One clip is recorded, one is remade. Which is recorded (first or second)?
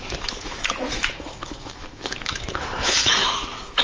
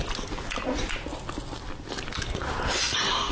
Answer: second